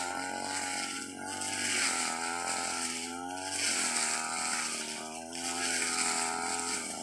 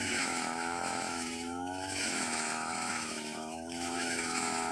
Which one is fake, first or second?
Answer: second